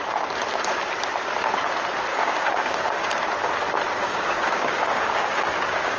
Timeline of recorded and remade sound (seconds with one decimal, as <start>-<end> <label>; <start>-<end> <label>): 0.0-2.1 recorded; 2.1-3.1 remade; 3.1-4.0 recorded; 4.0-6.0 remade